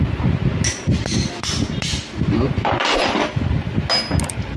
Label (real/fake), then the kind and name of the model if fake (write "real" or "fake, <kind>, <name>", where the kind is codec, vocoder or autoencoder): real